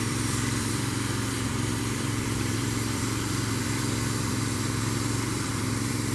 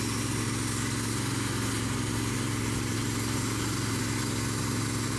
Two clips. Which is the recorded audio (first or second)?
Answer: second